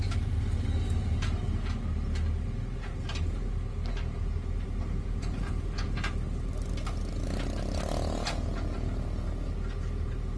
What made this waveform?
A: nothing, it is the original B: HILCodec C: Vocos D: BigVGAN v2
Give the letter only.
A